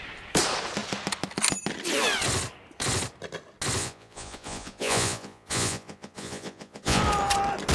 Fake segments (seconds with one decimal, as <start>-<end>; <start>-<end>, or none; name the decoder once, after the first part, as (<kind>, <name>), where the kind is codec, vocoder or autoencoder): 3.8-7.0 (vocoder, Vocos)